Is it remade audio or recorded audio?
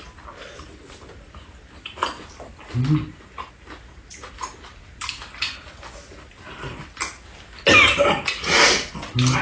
recorded